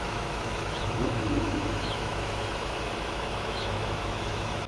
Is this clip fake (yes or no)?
yes